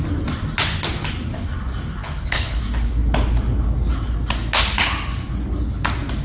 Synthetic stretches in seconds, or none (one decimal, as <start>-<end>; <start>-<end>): 2.0-2.6